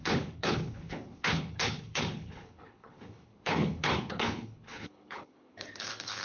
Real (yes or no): no